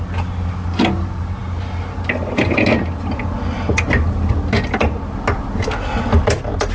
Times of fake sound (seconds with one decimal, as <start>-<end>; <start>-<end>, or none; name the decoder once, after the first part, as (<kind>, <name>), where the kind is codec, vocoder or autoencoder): none